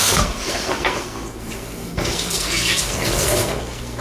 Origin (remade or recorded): remade